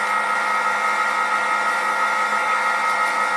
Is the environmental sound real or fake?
real